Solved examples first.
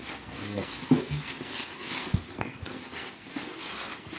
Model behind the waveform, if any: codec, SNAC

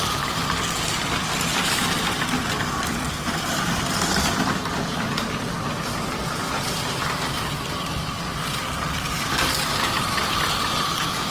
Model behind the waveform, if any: vocoder, BigVGAN v2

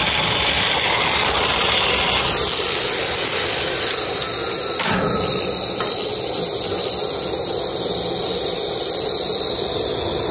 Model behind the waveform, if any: none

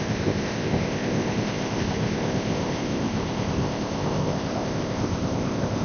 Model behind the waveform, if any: codec, ZipCodec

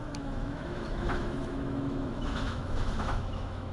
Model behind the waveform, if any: autoencoder, DAC-VAE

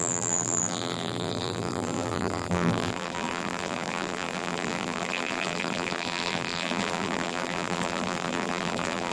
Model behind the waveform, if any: vocoder, BigVGAN v2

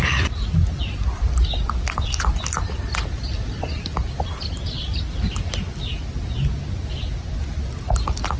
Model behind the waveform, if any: none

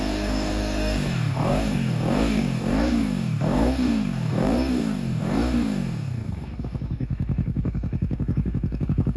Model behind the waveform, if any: codec, DAC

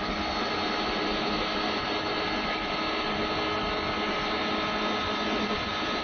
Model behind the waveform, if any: none